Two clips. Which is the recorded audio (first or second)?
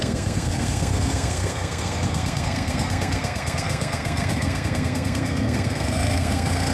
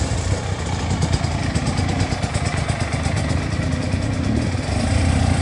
second